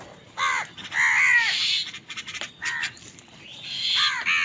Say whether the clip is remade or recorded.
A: recorded